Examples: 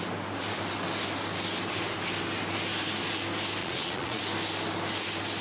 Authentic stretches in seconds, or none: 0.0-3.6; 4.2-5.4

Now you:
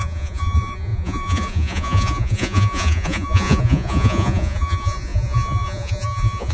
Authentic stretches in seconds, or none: none

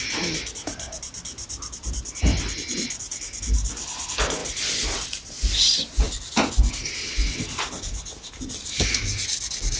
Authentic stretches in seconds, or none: 0.0-9.8

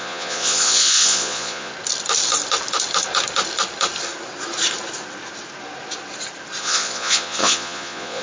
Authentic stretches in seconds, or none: 1.7-6.6